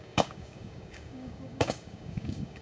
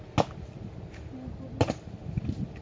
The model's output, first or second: first